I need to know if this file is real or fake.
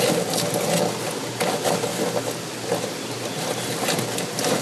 real